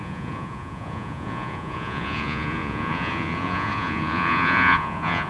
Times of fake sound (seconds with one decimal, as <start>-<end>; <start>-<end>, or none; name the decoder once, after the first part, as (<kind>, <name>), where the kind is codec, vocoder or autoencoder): 0.0-5.3 (vocoder, Vocos)